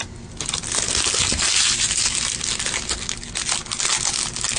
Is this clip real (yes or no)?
yes